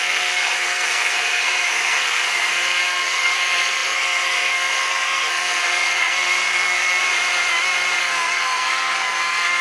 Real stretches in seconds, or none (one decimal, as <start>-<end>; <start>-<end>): 7.0-8.0